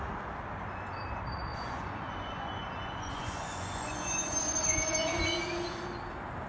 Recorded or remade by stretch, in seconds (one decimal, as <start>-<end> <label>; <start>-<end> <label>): 0.0-1.5 recorded; 1.5-5.4 remade; 5.4-6.5 recorded